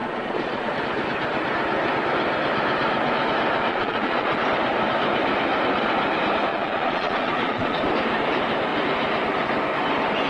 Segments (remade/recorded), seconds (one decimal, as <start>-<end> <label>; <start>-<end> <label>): 0.0-0.8 remade; 0.8-3.7 recorded; 3.7-4.4 remade; 4.4-6.5 recorded; 6.5-7.8 remade; 7.8-10.3 recorded